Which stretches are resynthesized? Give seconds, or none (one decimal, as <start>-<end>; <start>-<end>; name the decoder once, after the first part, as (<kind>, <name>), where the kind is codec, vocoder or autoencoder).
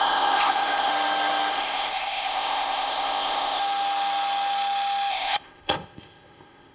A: 0.0-0.9 (codec, ZipCodec); 1.5-3.6; 5.1-6.7